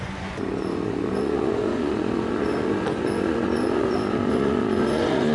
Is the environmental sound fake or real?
fake